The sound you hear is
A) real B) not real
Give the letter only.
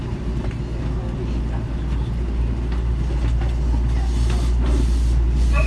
A